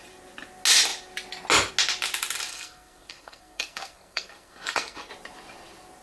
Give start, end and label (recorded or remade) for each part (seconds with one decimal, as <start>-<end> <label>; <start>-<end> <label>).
0.0-2.5 recorded; 2.5-5.1 remade; 5.1-6.0 recorded